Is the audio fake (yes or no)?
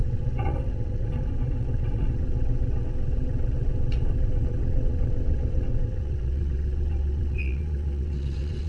yes